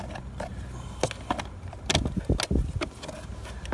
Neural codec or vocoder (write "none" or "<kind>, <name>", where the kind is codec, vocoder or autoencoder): none